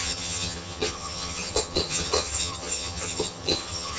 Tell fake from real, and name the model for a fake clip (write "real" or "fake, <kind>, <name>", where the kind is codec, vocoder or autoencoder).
fake, vocoder, HiFi-GAN